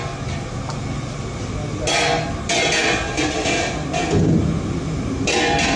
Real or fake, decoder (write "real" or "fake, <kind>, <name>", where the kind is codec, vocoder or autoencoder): real